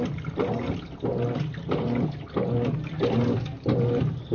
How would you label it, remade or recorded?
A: recorded